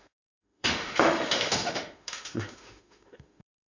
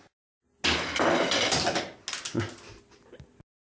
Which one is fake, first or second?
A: first